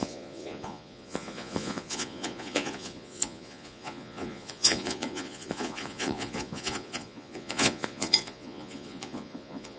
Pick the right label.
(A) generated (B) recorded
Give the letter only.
A